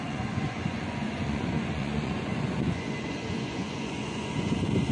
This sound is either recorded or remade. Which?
remade